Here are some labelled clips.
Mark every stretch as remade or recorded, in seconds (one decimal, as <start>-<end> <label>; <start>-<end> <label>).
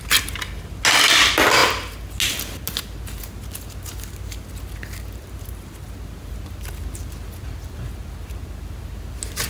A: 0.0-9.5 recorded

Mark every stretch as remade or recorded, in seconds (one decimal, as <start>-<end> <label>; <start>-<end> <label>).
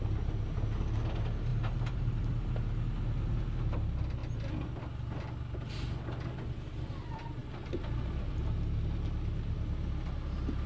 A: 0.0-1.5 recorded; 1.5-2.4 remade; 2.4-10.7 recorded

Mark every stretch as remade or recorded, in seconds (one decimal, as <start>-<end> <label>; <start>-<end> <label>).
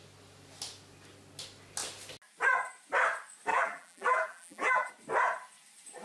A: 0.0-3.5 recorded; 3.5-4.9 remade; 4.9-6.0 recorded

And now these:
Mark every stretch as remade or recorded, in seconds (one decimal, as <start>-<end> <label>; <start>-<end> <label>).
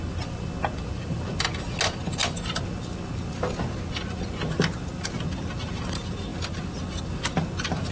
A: 0.0-7.9 recorded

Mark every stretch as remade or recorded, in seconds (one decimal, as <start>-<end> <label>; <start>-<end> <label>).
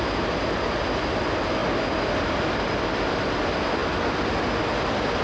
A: 0.0-5.2 recorded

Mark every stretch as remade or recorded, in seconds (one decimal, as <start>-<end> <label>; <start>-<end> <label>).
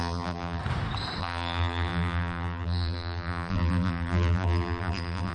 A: 0.0-0.6 remade; 0.6-1.2 recorded; 1.2-5.3 remade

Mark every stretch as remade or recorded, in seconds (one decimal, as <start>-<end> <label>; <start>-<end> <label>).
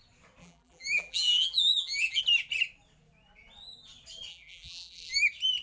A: 0.0-0.4 recorded; 0.4-2.2 remade; 2.2-4.3 recorded; 4.3-5.1 remade; 5.1-5.6 recorded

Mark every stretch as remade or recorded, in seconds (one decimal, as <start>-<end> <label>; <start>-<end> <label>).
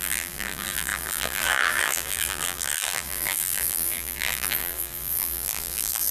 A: 0.0-6.1 remade